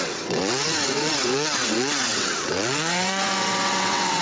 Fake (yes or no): yes